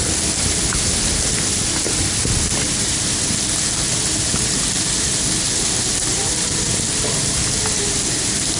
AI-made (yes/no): no